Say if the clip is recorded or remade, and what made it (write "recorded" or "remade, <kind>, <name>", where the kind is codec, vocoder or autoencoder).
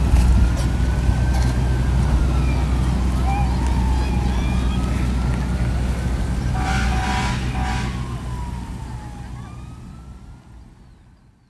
recorded